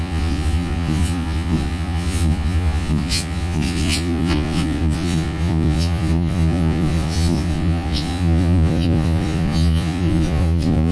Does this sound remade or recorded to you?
remade